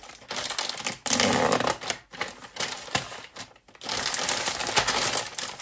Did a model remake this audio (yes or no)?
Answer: no